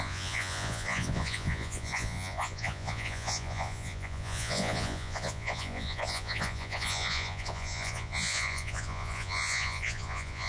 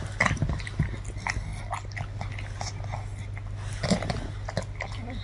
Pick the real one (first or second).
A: second